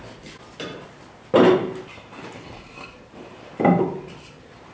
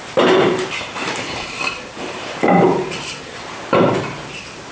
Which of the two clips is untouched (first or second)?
first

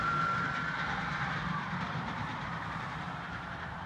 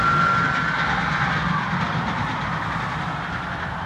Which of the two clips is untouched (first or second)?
second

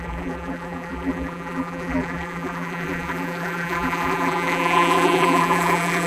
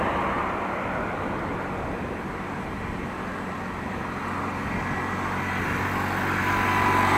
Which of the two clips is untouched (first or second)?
second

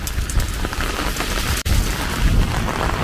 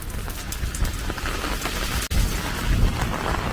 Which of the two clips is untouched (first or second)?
second